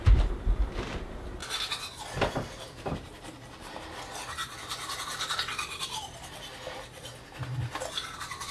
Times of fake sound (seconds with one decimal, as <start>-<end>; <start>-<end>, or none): 1.4-2.0